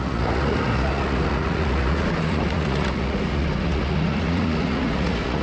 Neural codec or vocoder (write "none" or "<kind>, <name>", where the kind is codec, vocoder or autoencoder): vocoder, Vocos